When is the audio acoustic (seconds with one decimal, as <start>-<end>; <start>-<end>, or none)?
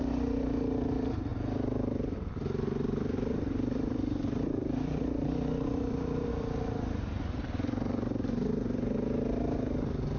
0.0-1.3; 6.3-10.2